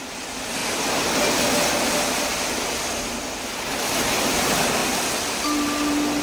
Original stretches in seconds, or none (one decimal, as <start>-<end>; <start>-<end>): 0.0-6.2